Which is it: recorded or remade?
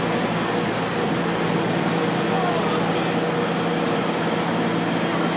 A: recorded